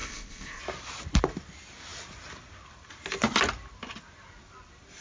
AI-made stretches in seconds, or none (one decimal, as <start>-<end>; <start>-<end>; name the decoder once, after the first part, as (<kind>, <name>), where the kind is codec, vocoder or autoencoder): 0.0-0.6 (codec, ZipCodec)